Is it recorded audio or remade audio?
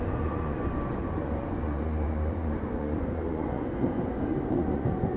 remade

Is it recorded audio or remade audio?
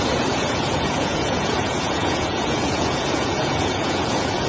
remade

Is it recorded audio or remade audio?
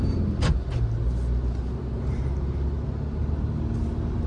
recorded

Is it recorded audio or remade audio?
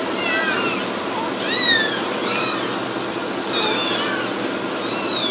recorded